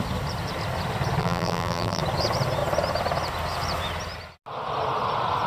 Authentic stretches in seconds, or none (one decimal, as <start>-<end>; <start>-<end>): 0.0-1.2; 2.0-5.5